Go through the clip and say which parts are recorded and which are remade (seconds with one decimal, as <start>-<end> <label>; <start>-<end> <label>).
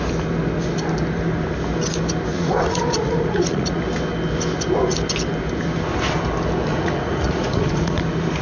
0.0-2.3 recorded; 2.3-3.8 remade; 3.8-6.7 recorded; 6.7-8.0 remade; 8.0-8.4 recorded